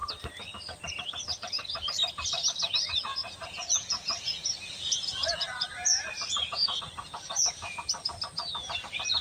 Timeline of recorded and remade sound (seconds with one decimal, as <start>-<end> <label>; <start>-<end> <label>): 0.0-2.7 recorded; 2.7-9.2 remade